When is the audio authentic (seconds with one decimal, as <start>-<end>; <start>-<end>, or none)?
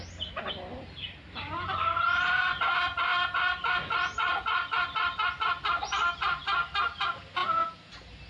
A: 0.0-7.4; 7.9-8.3